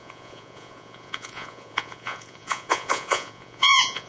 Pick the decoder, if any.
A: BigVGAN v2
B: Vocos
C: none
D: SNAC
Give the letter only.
B